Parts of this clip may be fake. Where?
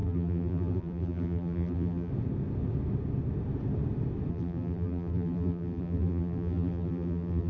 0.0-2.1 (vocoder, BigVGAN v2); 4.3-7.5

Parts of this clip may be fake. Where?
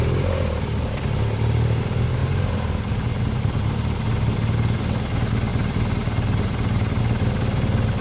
5.5-7.0 (vocoder, BigVGAN v2)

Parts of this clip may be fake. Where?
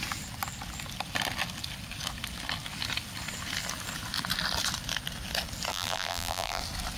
5.7-6.6 (vocoder, BigVGAN v2)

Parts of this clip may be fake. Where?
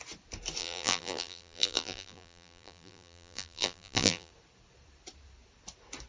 0.6-4.3 (vocoder, BigVGAN v2)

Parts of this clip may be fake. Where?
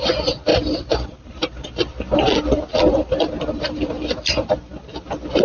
0.5-1.7 (vocoder, BigVGAN v2); 2.7-4.5